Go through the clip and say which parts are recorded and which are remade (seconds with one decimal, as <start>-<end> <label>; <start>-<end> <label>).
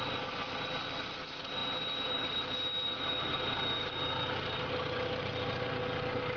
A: 0.0-6.4 recorded